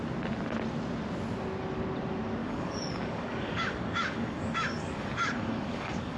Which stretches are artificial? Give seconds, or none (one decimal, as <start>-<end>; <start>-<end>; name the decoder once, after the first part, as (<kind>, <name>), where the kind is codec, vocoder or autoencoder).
2.4-6.2 (codec, DAC)